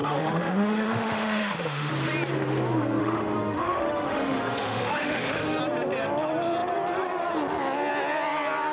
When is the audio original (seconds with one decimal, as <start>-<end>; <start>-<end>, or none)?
1.9-3.0; 5.6-8.7